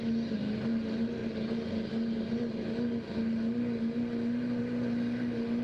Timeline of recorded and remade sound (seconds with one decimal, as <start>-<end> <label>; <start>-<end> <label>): 0.0-5.6 recorded